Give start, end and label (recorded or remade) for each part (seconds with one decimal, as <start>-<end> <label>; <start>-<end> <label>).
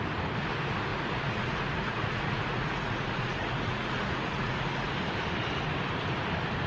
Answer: 0.0-0.9 recorded; 0.9-4.9 remade; 4.9-6.7 recorded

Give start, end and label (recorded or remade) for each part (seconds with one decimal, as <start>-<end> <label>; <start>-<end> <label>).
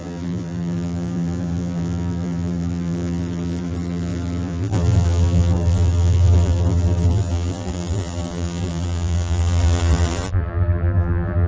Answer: 0.0-11.5 remade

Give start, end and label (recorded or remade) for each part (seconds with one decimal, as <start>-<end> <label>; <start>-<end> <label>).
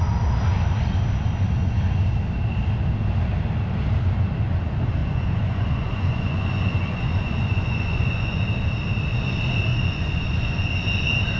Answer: 0.0-5.0 recorded; 5.0-8.4 remade; 8.4-9.7 recorded; 9.7-10.7 remade; 10.7-11.4 recorded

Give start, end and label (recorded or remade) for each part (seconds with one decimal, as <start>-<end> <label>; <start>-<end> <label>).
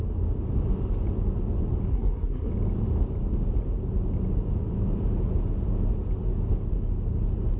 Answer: 0.0-1.9 recorded; 1.9-2.5 remade; 2.5-7.6 recorded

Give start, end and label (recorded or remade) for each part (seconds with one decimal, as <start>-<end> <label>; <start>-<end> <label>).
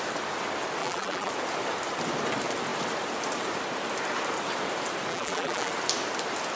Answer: 0.0-0.8 recorded; 0.8-1.3 remade; 1.3-5.1 recorded; 5.1-5.7 remade; 5.7-6.6 recorded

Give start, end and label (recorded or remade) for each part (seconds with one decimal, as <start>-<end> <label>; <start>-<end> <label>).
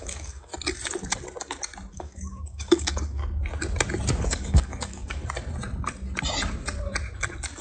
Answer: 0.0-0.5 remade; 0.5-1.9 recorded; 1.9-3.2 remade; 3.2-4.2 recorded; 4.2-5.2 remade; 5.2-7.6 recorded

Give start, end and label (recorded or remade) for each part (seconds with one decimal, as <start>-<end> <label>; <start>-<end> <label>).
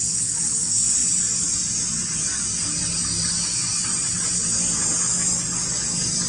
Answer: 0.0-6.3 recorded